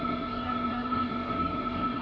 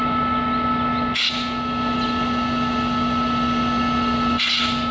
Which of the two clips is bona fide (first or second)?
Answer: second